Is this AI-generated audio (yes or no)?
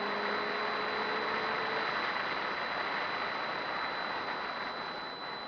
no